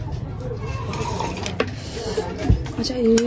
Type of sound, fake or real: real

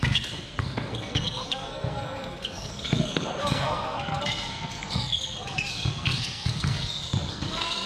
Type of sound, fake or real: fake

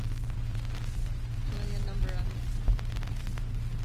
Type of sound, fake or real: real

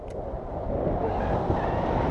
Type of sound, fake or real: real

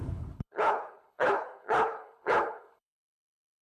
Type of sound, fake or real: fake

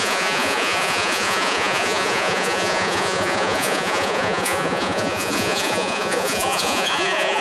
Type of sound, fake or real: fake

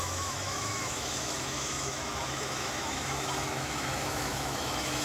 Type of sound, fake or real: fake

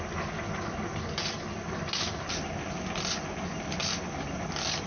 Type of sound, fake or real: real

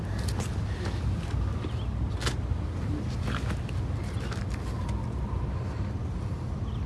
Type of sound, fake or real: real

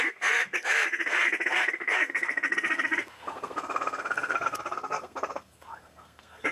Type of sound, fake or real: fake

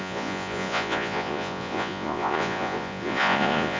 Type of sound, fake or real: fake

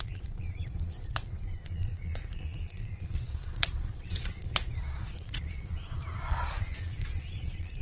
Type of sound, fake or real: fake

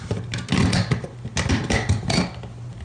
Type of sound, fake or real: real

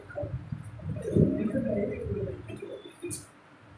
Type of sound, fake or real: real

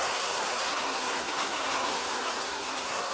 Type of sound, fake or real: fake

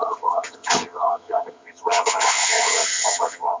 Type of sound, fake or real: fake